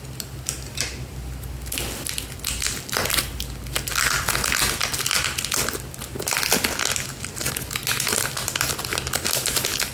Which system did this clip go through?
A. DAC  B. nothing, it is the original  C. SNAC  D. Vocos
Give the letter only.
B